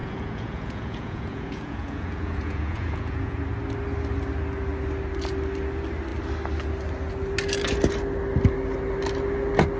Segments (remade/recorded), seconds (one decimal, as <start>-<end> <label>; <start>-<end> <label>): 0.0-3.4 remade; 3.4-9.8 recorded